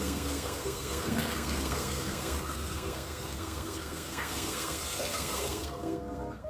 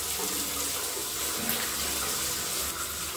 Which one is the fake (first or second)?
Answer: first